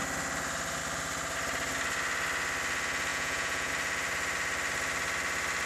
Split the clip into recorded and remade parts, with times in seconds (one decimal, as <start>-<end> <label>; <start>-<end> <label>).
0.0-3.1 recorded; 3.1-3.7 remade; 3.7-5.7 recorded